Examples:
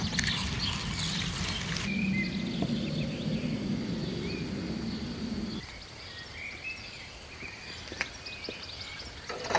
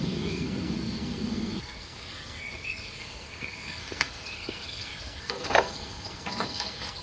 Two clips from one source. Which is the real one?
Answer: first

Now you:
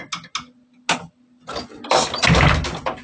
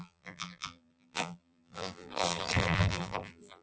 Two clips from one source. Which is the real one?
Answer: first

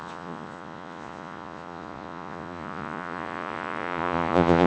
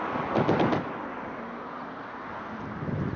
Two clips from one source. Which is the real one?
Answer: second